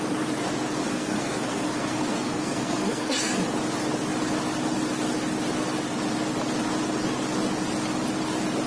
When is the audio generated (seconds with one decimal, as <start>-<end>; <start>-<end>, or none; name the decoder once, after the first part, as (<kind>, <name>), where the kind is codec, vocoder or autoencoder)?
0.8-3.4 (codec, SNAC)